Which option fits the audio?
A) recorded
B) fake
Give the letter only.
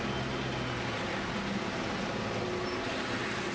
A